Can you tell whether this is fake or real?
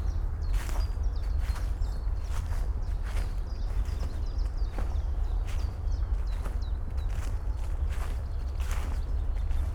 real